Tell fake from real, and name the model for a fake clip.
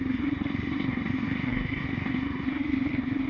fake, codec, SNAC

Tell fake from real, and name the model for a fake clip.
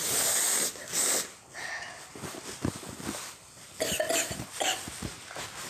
real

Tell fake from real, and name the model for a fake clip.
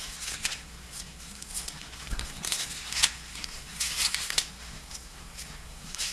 fake, codec, SNAC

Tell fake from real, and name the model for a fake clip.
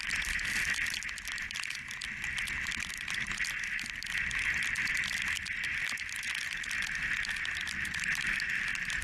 real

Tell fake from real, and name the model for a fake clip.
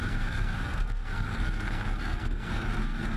fake, codec, SNAC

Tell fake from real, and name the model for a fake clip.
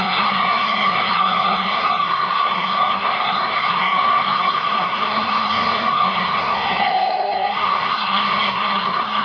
fake, codec, SNAC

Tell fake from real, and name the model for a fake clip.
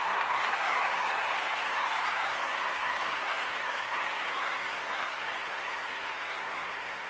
fake, codec, SNAC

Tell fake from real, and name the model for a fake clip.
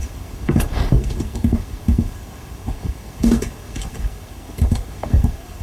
fake, codec, SNAC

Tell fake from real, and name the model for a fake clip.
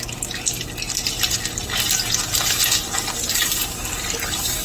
real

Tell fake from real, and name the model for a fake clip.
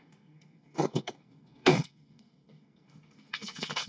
fake, codec, SNAC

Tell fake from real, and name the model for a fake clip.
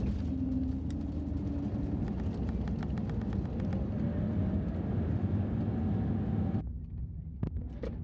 real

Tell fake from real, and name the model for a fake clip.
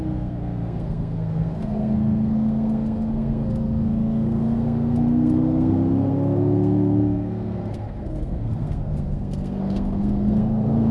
fake, codec, SNAC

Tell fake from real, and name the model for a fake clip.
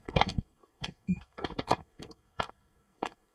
fake, codec, SNAC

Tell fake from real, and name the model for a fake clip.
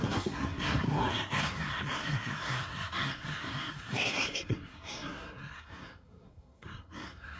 fake, codec, SNAC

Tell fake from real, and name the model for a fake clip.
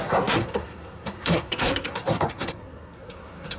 fake, codec, SNAC